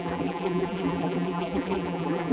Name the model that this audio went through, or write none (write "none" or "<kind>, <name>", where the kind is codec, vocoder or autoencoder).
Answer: vocoder, BigVGAN v2